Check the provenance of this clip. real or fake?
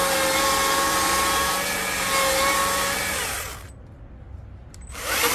real